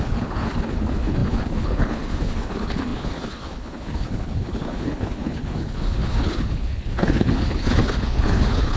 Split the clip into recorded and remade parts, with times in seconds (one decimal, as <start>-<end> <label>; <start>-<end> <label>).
0.0-8.8 remade